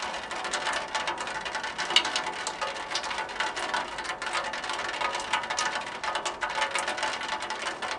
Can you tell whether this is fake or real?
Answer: real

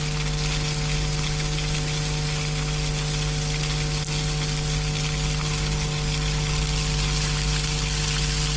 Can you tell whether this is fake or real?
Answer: real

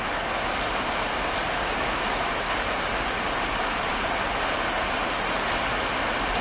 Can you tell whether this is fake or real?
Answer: real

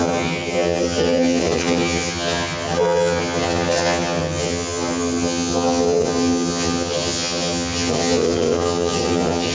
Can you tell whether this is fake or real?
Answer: fake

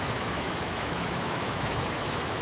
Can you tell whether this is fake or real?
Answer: fake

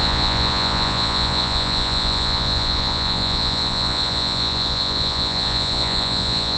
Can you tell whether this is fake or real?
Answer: fake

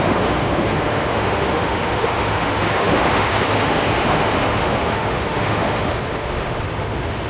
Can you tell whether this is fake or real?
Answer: fake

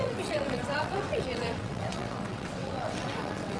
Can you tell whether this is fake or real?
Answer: fake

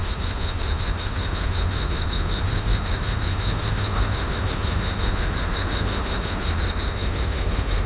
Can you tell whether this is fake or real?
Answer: fake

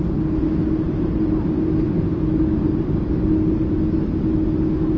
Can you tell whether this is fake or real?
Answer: real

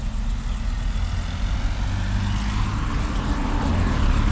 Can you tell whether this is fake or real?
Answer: real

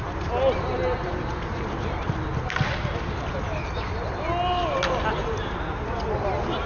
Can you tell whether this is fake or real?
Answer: real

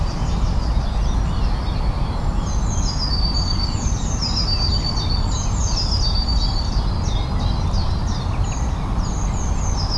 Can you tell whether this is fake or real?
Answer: real